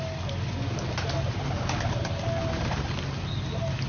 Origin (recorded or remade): recorded